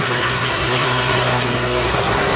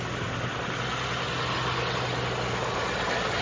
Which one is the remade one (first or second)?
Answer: first